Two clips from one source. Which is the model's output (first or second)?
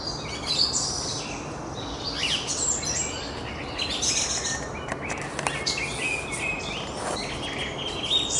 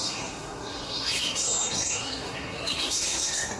second